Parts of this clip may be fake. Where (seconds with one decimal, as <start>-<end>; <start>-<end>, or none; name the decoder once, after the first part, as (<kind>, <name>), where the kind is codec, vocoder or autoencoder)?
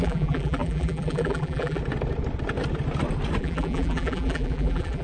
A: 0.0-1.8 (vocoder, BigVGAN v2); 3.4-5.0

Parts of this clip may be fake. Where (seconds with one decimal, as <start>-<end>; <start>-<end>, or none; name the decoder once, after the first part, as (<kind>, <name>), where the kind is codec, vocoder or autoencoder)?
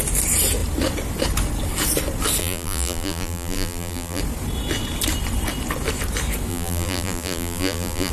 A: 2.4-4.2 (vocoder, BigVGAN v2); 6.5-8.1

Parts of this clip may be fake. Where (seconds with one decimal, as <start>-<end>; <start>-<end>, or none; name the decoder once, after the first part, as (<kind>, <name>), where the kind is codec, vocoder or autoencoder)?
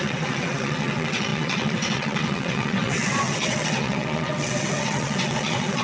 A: 0.0-5.8 (vocoder, WaveNeXt)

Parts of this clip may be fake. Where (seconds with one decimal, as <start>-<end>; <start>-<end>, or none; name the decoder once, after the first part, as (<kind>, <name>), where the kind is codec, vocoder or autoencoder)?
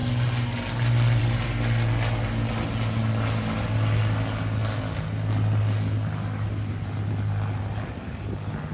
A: none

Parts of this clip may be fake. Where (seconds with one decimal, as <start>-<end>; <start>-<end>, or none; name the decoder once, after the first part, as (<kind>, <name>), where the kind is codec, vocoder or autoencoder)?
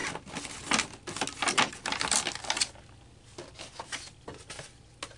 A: none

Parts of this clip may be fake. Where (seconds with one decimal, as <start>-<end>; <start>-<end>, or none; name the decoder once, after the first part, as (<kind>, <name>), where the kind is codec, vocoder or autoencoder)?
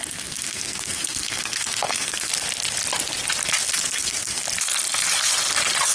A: 0.0-2.3 (codec, SNAC); 3.7-4.4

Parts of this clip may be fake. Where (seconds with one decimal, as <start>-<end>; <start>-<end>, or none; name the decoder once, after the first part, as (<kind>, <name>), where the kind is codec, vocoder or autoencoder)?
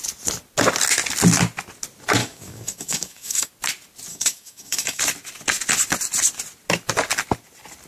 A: 2.2-3.5 (codec, DAC); 4.1-5.0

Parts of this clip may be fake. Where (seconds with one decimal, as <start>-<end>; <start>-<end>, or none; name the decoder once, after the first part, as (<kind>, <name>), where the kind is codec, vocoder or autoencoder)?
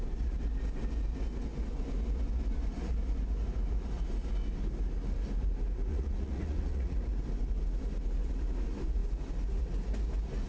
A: 5.9-7.1 (vocoder, Vocos)